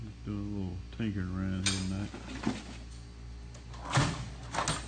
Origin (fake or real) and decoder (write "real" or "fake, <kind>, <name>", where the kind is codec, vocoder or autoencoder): real